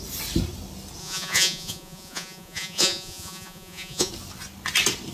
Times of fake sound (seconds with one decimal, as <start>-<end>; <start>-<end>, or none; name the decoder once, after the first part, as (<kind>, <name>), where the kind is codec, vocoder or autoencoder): 1.0-4.1 (vocoder, Vocos)